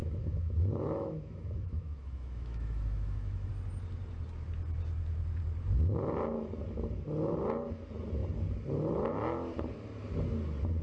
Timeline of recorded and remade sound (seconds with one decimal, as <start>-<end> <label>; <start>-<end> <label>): 0.0-3.5 remade; 3.5-10.8 recorded